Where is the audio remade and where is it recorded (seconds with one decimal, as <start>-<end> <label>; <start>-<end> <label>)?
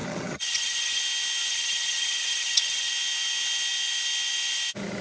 0.0-1.0 remade; 1.0-1.5 recorded; 1.5-2.9 remade; 2.9-5.0 recorded